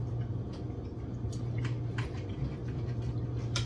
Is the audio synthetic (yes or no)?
no